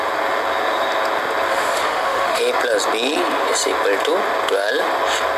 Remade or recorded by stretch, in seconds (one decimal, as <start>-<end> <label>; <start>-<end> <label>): 0.0-1.5 recorded; 1.5-2.4 remade; 2.4-5.4 recorded